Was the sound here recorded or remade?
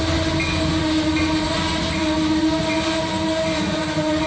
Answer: recorded